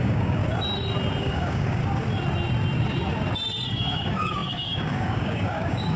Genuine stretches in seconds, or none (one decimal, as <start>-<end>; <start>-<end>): 0.4-1.2; 1.8-3.7